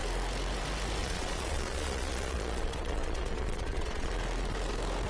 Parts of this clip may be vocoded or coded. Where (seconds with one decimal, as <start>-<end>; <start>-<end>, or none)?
1.0-4.1